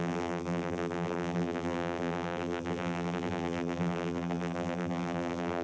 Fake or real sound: fake